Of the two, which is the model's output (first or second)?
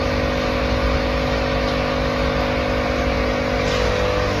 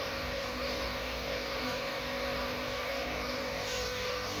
second